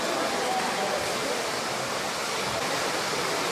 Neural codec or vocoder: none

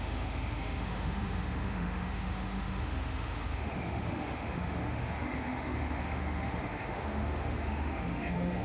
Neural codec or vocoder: autoencoder, DAC-VAE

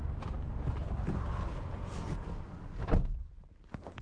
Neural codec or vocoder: none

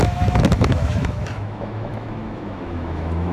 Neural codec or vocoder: autoencoder, DAC-VAE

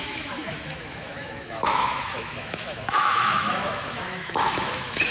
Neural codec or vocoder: autoencoder, DAC-VAE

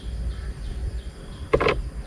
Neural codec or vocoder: none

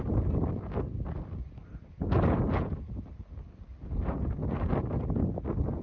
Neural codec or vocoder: none